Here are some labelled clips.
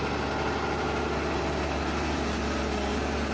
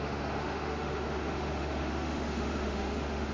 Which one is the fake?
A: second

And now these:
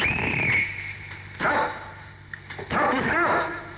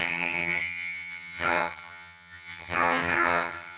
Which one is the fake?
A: second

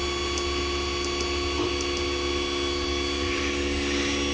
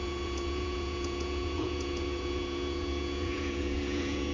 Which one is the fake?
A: second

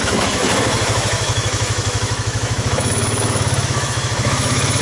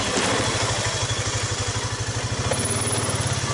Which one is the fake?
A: first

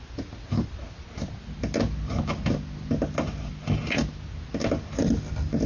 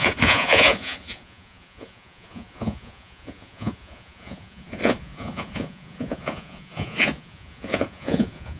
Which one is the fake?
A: second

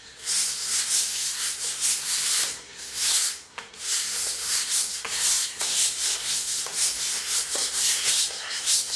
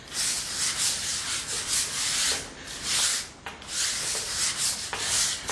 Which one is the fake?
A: first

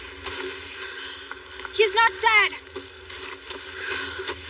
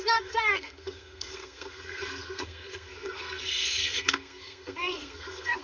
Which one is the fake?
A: second